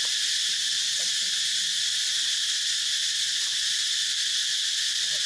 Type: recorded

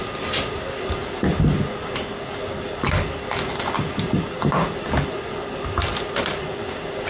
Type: recorded